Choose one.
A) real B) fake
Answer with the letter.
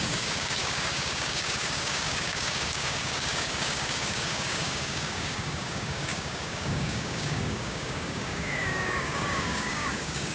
B